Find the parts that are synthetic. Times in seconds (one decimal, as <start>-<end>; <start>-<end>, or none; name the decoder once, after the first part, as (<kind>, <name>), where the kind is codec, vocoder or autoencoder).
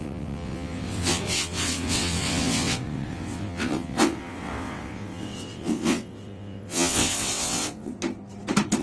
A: 0.0-7.9 (vocoder, WaveNeXt)